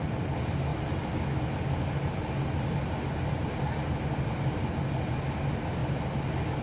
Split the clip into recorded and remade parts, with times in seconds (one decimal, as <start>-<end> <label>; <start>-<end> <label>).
0.0-6.6 recorded